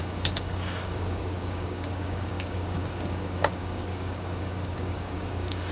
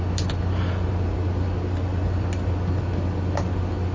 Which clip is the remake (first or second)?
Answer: first